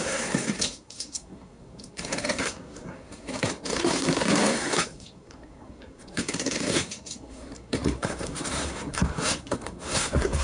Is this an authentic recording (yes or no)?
no